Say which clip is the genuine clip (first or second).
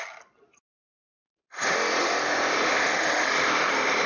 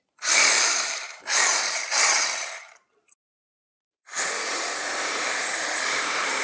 first